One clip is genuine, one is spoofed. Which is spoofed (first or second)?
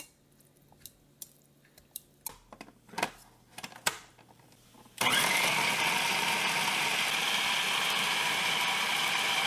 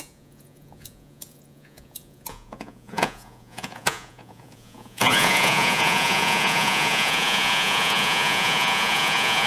second